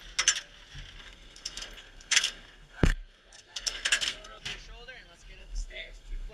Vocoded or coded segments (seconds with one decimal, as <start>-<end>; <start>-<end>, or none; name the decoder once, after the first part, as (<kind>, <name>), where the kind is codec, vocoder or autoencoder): 1.0-4.4 (codec, SNAC); 5.4-6.3